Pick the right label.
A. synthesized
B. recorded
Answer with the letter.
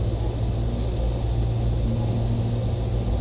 B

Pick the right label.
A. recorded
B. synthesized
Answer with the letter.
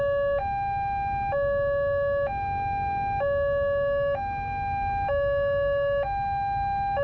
A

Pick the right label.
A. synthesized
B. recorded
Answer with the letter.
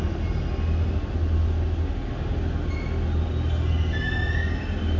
B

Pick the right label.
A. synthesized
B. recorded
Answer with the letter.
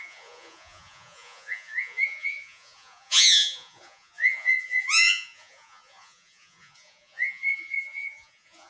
A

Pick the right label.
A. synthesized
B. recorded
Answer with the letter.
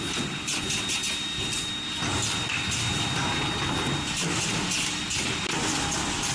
B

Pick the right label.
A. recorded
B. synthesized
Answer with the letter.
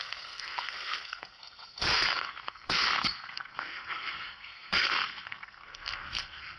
B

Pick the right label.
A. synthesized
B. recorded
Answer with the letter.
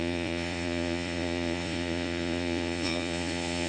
A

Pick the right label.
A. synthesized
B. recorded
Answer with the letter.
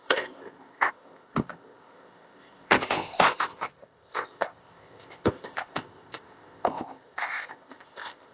A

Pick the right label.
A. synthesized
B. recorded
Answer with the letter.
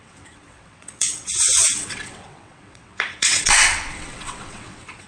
A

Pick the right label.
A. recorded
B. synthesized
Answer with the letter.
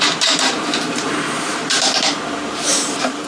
B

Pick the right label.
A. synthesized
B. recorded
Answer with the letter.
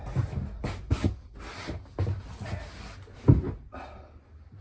B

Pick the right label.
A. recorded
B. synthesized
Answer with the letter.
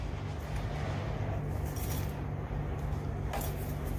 A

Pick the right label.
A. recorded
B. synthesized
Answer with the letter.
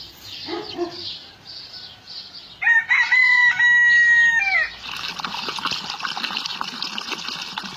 A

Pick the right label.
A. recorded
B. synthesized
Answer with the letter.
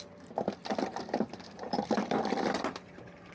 B